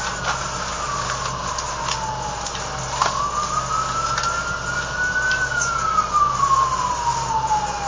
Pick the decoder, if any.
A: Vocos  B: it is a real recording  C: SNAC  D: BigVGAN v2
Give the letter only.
B